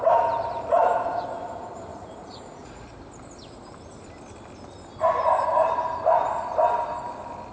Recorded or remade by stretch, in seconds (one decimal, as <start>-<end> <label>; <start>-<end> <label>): 0.0-1.9 recorded; 1.9-2.9 remade; 2.9-7.5 recorded